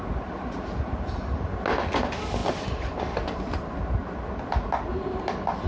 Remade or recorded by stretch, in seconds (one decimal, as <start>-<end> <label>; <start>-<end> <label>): 0.0-2.4 recorded; 2.4-3.0 remade; 3.0-4.0 recorded; 4.0-4.9 remade; 4.9-5.7 recorded